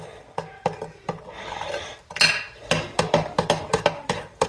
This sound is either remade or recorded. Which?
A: recorded